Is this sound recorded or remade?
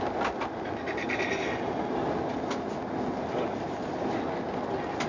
recorded